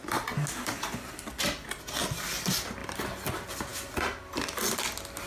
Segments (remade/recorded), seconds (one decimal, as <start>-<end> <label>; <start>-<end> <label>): 0.0-2.8 recorded; 2.8-3.3 remade; 3.3-5.3 recorded